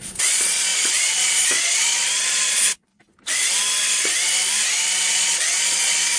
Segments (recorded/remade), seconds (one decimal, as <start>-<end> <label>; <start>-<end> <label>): 0.0-2.9 remade; 2.9-5.1 recorded; 5.1-6.2 remade